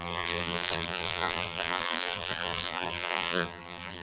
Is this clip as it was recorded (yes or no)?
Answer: no